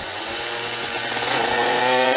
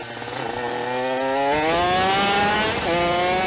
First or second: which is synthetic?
first